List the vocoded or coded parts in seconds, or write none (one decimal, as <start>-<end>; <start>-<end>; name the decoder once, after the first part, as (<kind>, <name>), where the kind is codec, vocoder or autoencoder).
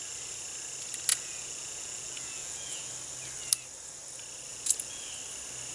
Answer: 1.1-2.9 (vocoder, Vocos); 4.5-5.1